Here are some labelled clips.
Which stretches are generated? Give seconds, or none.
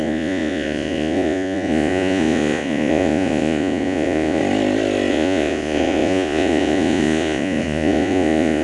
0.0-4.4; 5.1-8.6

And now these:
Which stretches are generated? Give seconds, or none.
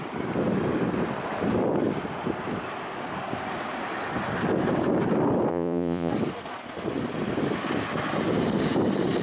5.5-6.1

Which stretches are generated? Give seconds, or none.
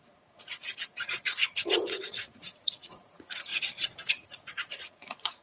0.0-3.5; 4.1-5.4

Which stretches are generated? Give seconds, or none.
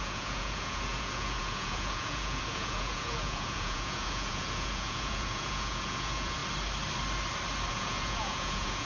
0.0-6.4; 7.7-8.9